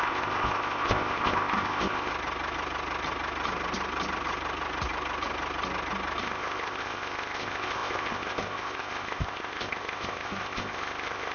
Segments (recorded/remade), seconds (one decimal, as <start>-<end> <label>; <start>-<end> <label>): 0.0-2.1 remade; 2.1-6.2 recorded; 6.2-11.3 remade